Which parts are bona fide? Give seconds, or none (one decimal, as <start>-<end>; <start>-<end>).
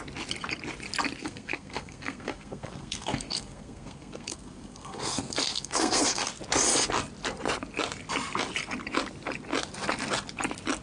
0.0-1.2; 6.3-10.8